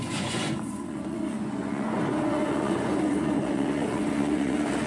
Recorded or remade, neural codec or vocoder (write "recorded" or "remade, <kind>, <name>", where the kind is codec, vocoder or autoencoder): remade, vocoder, Vocos